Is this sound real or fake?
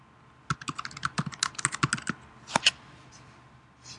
real